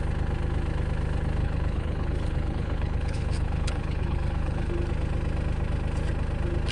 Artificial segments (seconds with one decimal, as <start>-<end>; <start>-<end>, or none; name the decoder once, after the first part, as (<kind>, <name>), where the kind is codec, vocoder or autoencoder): 1.4-4.7 (codec, HILCodec)